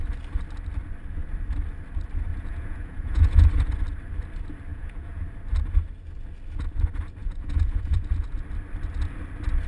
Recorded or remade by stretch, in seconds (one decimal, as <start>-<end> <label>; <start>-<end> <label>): 0.0-2.3 recorded; 2.3-3.5 remade; 3.5-4.7 recorded; 4.7-5.2 remade; 5.2-7.2 recorded; 7.2-8.4 remade; 8.4-9.7 recorded